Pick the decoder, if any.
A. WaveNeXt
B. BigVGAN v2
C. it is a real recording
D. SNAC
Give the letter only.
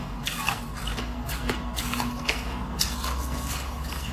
D